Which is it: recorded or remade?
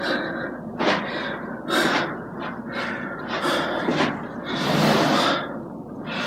recorded